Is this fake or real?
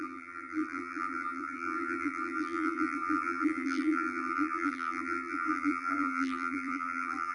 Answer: fake